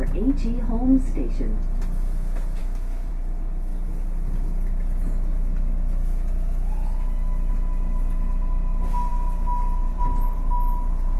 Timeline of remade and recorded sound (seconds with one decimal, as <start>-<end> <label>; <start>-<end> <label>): 0.0-2.6 recorded; 2.6-3.1 remade; 3.1-11.2 recorded